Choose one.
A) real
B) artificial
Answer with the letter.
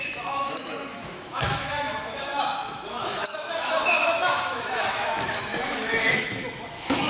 B